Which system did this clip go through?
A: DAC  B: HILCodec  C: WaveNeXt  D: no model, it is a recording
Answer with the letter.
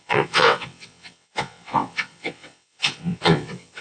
C